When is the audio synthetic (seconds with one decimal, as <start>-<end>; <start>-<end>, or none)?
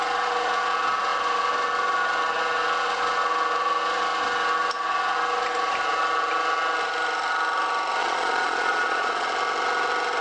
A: 8.0-9.3